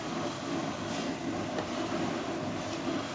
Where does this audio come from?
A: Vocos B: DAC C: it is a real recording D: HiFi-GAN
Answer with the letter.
C